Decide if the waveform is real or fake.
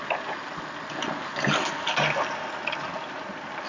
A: real